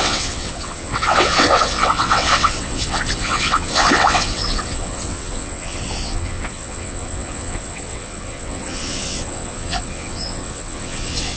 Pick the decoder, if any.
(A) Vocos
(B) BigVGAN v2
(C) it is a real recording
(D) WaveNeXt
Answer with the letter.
D